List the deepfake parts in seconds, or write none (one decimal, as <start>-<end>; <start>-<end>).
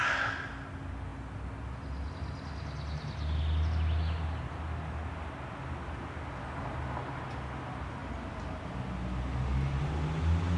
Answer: none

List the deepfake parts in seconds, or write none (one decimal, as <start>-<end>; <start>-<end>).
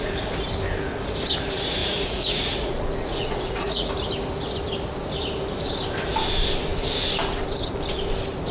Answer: 1.8-3.9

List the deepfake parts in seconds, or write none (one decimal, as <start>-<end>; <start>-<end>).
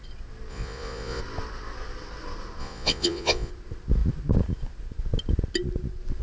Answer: 0.5-1.2; 2.6-3.5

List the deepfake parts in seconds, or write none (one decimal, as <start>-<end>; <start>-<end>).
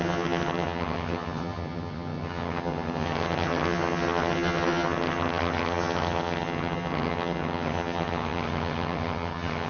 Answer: 0.0-9.7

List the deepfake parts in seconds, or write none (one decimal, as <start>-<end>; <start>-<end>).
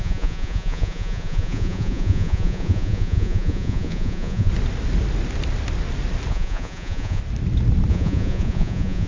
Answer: 0.0-4.5; 6.3-7.2; 7.9-9.1